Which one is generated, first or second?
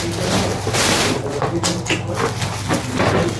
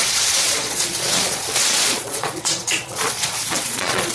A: second